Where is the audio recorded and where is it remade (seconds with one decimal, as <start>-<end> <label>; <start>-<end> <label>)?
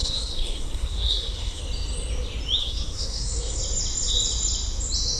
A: 0.0-1.6 remade; 1.6-2.6 recorded; 2.6-3.6 remade; 3.6-5.2 recorded